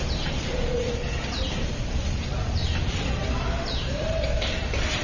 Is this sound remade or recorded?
remade